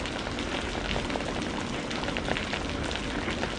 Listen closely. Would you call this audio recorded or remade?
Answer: recorded